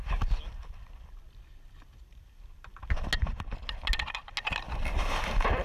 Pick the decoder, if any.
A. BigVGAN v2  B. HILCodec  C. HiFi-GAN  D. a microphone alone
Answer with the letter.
D